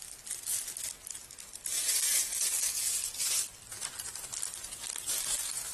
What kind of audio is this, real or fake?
fake